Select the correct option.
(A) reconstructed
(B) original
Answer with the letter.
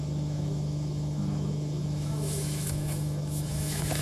A